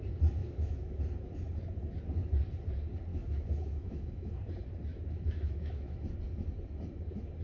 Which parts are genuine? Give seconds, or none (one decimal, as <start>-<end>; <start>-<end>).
0.0-0.4; 1.0-3.1; 4.3-4.9; 6.0-7.4